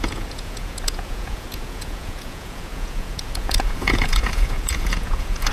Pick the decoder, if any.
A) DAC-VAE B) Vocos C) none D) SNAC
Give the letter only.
B